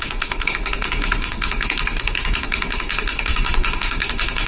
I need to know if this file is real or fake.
fake